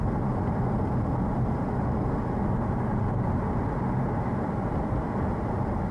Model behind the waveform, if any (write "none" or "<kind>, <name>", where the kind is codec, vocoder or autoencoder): none